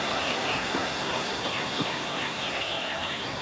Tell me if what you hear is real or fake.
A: fake